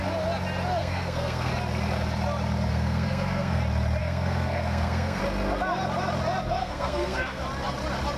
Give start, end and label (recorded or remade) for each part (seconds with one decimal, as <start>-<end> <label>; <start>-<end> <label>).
0.0-0.8 recorded; 0.8-1.5 remade; 1.5-2.7 recorded; 2.7-3.6 remade; 3.6-4.0 recorded; 4.0-5.2 remade; 5.2-6.6 recorded; 6.6-7.4 remade; 7.4-8.2 recorded